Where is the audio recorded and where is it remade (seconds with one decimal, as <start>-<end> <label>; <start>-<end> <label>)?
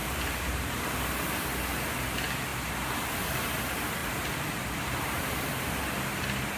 0.0-0.7 remade; 0.7-4.0 recorded; 4.0-5.4 remade; 5.4-6.6 recorded